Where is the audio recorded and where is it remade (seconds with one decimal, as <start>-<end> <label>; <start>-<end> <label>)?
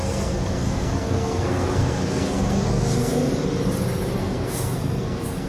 0.0-3.3 remade; 3.3-4.2 recorded; 4.2-5.5 remade